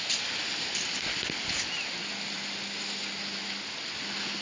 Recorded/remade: recorded